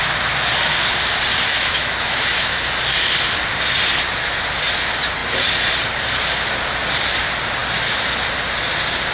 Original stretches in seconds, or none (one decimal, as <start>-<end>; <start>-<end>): 0.0-1.5; 2.6-9.1